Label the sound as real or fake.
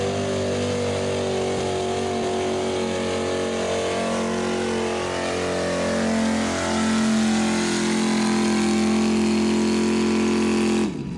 real